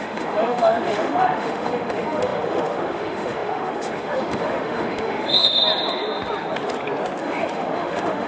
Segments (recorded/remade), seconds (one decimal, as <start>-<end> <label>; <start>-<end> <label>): 0.0-5.6 remade; 5.6-7.2 recorded; 7.2-8.3 remade